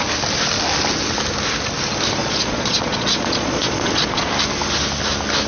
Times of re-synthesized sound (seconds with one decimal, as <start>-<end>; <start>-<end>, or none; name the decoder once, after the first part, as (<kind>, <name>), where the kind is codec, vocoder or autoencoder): 2.2-4.3 (vocoder, Vocos)